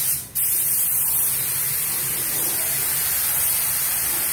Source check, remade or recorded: recorded